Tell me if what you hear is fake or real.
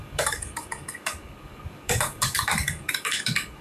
fake